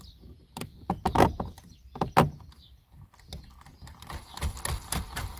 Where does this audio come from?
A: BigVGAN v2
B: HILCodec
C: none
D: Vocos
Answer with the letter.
C